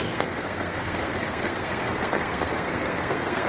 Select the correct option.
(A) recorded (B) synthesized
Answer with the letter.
B